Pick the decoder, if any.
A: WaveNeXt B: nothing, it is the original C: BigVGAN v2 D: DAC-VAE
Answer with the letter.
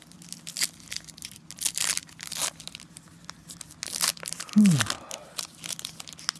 B